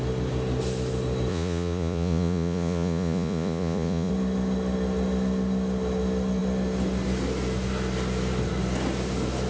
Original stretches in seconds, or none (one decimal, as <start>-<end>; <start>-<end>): 0.0-1.3; 4.1-9.5